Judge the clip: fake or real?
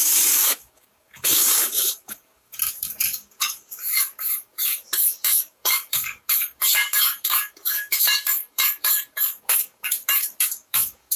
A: fake